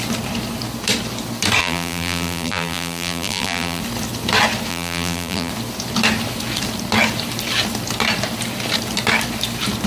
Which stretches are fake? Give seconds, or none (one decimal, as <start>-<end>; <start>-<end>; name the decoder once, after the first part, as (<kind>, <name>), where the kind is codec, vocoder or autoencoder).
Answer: 1.6-3.8 (vocoder, BigVGAN v2); 4.7-5.5